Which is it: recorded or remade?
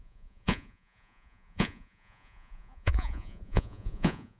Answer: remade